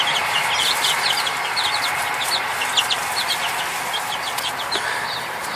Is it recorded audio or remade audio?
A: recorded